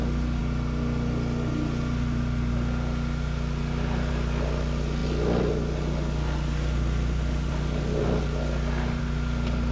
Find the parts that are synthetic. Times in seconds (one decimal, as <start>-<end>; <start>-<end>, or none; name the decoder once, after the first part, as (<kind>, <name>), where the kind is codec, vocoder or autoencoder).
none